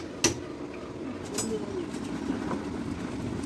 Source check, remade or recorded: recorded